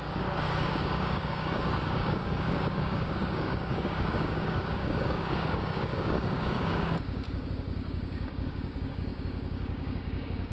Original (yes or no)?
no